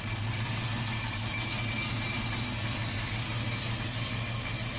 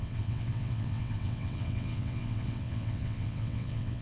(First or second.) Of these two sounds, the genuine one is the first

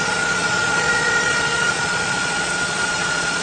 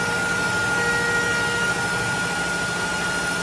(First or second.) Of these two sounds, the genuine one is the second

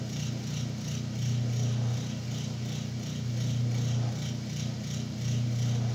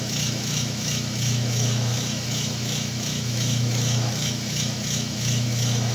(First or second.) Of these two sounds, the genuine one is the first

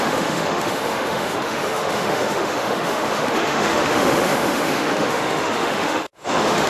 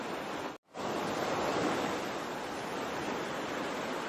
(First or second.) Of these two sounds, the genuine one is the second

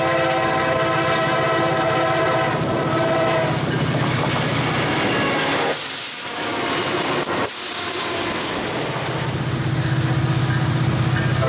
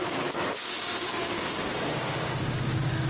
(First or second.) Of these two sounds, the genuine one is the first